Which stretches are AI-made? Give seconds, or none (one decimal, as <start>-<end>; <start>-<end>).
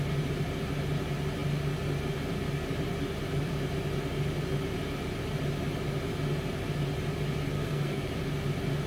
7.5-8.1